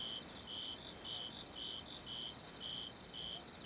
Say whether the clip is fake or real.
real